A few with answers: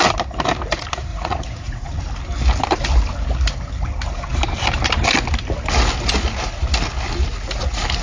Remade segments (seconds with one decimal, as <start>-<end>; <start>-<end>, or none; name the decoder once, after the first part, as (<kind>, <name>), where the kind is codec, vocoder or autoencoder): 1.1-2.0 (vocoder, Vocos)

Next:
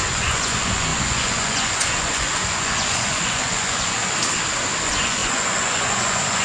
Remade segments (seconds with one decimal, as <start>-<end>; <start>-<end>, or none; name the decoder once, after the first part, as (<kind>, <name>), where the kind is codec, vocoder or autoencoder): 0.0-4.0 (vocoder, Vocos); 4.8-6.4

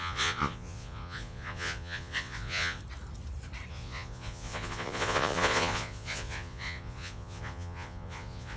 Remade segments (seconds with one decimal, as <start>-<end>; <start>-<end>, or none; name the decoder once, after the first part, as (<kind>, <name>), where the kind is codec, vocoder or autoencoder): 0.0-2.8 (vocoder, Vocos); 3.7-8.6

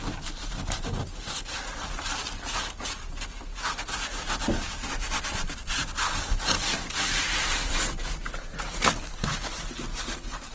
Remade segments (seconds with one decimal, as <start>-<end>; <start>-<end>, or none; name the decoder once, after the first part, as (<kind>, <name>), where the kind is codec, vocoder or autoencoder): none

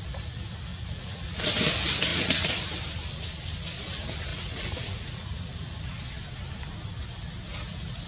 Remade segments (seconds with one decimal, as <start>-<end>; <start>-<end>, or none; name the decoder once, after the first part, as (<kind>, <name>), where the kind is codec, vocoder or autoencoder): 0.7-1.5 (vocoder, Vocos); 2.1-2.6; 4.3-5.8

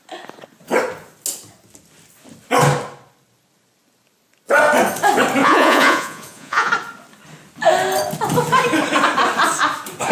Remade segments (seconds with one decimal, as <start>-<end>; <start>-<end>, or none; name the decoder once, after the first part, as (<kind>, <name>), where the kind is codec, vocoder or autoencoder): 5.4-6.7 (vocoder, Vocos)

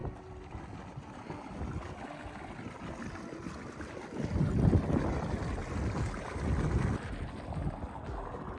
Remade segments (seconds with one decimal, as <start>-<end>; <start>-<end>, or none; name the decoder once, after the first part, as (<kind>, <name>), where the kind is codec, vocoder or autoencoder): none

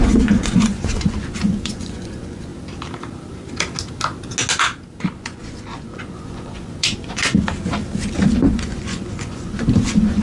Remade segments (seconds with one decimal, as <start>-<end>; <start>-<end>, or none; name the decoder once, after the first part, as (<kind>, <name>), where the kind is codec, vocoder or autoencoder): 0.0-2.5 (vocoder, Vocos); 5.2-7.2; 8.5-10.2